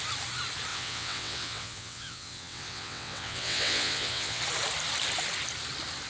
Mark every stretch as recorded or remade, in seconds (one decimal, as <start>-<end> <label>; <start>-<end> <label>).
0.0-0.7 recorded; 0.7-4.4 remade; 4.4-6.1 recorded